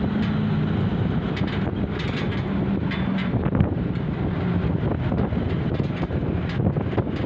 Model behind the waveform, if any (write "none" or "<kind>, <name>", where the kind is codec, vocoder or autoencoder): none